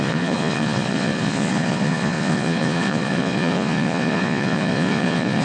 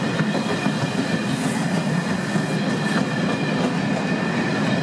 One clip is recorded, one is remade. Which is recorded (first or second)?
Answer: second